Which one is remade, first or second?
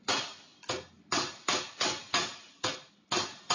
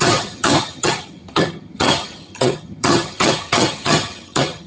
second